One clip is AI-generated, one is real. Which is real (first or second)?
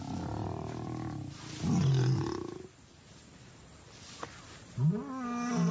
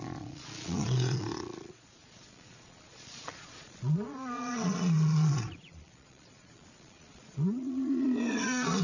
first